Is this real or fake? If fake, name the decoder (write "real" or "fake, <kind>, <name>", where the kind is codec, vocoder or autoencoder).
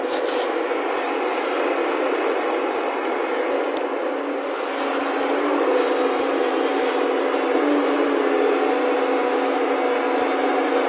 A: real